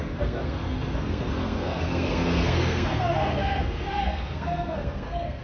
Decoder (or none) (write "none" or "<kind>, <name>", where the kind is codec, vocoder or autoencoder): codec, SNAC